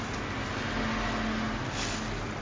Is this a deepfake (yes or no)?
no